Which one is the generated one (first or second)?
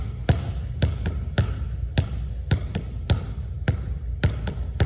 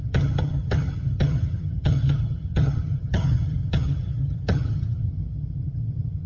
second